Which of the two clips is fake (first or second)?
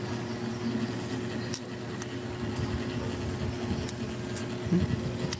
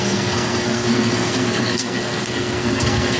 second